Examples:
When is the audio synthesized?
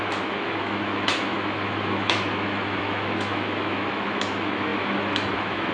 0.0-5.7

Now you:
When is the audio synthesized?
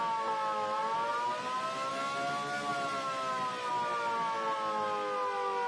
none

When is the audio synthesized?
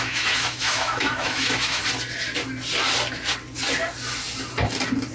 0.0-1.8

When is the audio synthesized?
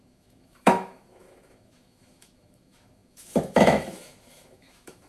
0.0-5.1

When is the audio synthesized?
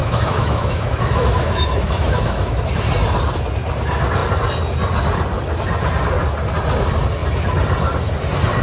0.0-2.7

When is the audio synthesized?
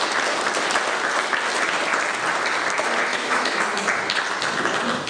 3.1-3.6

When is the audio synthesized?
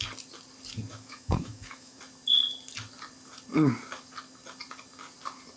0.9-2.0